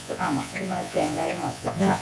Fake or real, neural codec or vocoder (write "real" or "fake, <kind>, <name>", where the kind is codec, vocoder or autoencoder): fake, vocoder, Vocos